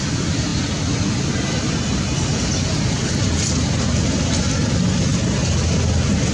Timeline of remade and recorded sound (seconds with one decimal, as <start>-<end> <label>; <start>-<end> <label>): 0.0-6.3 recorded